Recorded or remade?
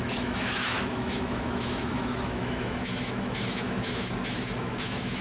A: remade